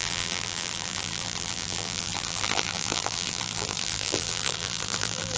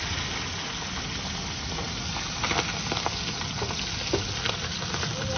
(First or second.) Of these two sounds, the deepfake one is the first